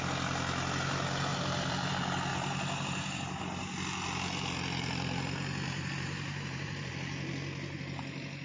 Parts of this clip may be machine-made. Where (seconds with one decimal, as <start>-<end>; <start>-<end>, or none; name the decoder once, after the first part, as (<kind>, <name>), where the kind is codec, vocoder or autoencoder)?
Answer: 1.3-1.9 (vocoder, BigVGAN v2); 2.3-3.4; 5.6-6.9